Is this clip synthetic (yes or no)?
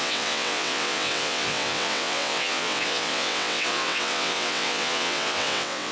yes